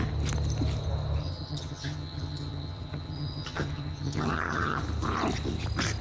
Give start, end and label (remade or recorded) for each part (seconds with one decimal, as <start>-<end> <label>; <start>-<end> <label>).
0.0-1.2 recorded; 1.2-4.8 remade; 4.8-6.0 recorded